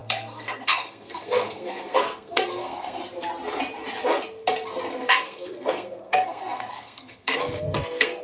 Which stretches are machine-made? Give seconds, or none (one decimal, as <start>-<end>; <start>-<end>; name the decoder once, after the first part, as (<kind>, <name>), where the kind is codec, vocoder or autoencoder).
0.0-3.0 (codec, SNAC); 4.9-8.2